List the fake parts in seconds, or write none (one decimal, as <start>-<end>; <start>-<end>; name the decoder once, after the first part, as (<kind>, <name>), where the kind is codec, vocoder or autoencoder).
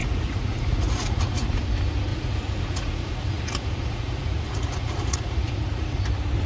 0.0-1.6 (vocoder, Vocos); 2.1-6.0